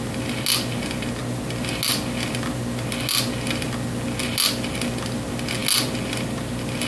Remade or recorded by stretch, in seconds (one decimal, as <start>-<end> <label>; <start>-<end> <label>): 0.0-6.9 recorded